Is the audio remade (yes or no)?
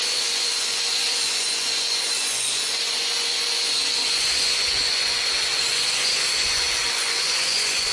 yes